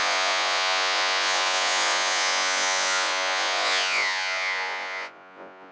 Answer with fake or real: fake